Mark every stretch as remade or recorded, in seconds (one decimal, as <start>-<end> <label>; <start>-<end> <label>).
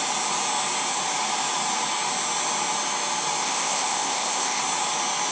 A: 0.0-3.4 recorded; 3.4-4.6 remade; 4.6-5.3 recorded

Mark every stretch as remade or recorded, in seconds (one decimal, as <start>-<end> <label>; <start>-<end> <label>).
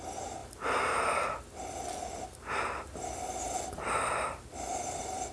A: 0.0-5.3 recorded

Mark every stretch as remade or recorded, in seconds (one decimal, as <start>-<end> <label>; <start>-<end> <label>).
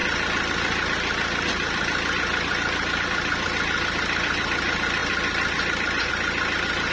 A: 0.0-6.9 recorded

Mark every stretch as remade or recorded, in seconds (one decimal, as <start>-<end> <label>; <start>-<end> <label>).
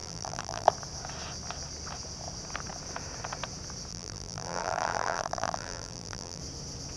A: 0.0-0.7 remade; 0.7-3.9 recorded; 3.9-6.4 remade; 6.4-7.0 recorded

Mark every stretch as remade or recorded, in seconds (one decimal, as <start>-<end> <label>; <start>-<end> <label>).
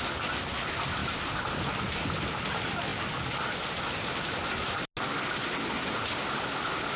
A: 0.0-7.0 recorded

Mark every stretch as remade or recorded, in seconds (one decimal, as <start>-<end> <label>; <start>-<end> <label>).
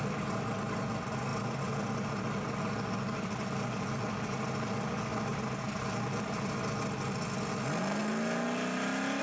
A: 0.0-9.2 recorded